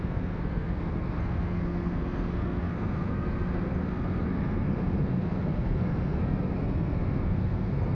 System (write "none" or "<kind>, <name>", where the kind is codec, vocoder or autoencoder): codec, SNAC